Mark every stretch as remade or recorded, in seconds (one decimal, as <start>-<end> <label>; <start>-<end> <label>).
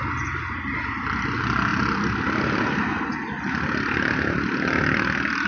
0.0-1.7 recorded; 1.7-4.8 remade; 4.8-5.5 recorded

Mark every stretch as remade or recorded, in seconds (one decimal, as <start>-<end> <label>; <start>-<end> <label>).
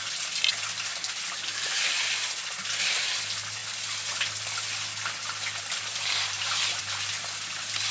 0.0-7.9 recorded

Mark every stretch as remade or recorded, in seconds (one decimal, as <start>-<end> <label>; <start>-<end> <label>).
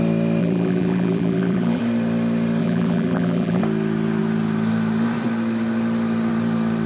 0.0-0.4 recorded; 0.4-1.8 remade; 1.8-2.6 recorded; 2.6-3.6 remade; 3.6-6.9 recorded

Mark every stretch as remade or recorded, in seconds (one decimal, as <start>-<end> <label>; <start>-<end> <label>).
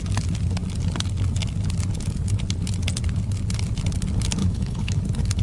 0.0-4.4 recorded; 4.4-5.0 remade; 5.0-5.4 recorded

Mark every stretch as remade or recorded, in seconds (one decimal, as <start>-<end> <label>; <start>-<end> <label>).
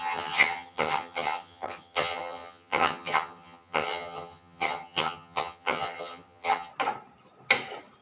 0.0-6.7 remade; 6.7-8.0 recorded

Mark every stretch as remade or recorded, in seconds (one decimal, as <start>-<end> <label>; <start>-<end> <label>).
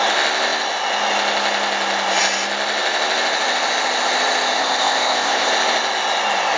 0.0-4.6 recorded; 4.6-5.5 remade; 5.5-6.6 recorded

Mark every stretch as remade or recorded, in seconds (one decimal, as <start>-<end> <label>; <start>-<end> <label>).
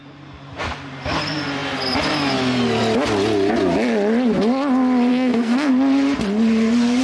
0.0-5.1 recorded; 5.1-5.7 remade; 5.7-7.0 recorded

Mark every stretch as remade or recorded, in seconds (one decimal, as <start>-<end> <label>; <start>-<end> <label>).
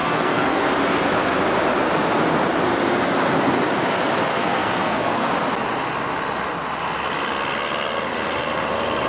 0.0-0.7 remade; 0.7-4.3 recorded; 4.3-5.3 remade; 5.3-9.1 recorded